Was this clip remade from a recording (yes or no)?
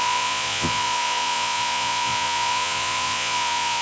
yes